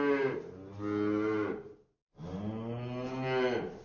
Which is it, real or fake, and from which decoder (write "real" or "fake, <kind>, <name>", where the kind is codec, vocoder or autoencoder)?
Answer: real